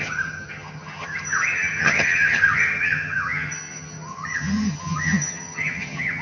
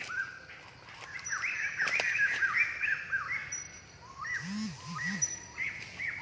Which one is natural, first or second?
second